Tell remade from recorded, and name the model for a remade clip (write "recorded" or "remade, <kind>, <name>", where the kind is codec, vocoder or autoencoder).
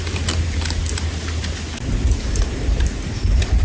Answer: recorded